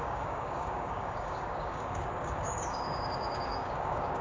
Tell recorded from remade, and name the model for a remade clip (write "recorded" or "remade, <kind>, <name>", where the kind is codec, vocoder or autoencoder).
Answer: remade, codec, DAC